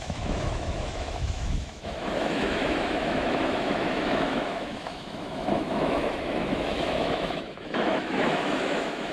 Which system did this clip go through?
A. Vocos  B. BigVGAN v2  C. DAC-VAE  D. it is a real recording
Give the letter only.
C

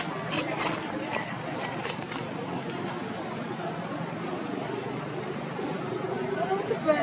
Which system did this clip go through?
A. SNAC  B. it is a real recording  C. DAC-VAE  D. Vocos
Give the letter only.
B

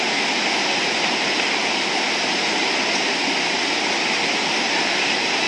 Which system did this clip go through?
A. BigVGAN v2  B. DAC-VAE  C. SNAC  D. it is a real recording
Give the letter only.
D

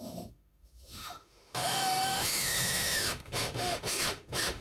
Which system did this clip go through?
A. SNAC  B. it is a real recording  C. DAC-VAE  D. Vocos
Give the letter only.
C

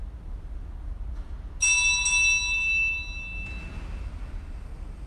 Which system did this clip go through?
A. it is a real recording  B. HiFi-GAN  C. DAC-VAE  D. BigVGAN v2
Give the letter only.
A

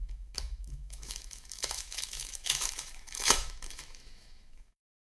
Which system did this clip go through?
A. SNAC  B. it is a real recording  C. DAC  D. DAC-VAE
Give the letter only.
D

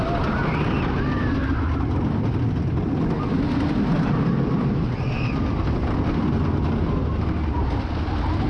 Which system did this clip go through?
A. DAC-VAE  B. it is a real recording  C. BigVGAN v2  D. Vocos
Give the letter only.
B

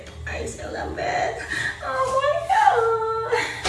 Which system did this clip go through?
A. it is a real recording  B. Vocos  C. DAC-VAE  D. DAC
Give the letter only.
A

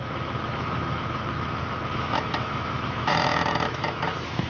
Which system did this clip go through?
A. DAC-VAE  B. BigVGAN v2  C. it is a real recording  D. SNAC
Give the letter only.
A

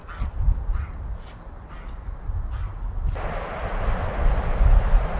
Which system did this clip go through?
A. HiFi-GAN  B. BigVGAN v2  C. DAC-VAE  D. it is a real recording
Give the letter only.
D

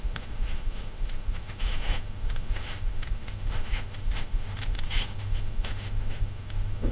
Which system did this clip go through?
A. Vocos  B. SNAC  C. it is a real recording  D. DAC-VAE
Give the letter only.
D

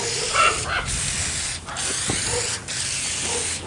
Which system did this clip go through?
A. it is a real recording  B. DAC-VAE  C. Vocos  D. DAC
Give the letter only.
A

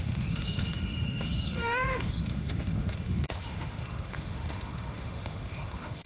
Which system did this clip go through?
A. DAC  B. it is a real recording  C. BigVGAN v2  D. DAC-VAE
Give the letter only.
D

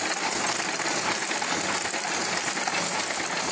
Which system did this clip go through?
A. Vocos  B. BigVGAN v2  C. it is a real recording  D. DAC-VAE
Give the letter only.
C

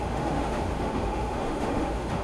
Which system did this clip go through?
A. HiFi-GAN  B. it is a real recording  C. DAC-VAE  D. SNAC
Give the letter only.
C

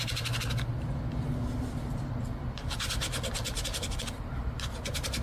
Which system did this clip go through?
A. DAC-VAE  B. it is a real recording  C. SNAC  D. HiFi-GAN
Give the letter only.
B